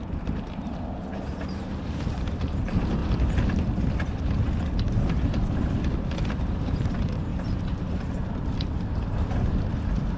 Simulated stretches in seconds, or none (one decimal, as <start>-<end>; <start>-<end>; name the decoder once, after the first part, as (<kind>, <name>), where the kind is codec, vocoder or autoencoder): 0.0-3.0 (vocoder, BigVGAN v2); 6.6-7.3